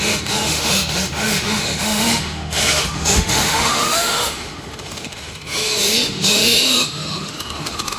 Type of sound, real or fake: fake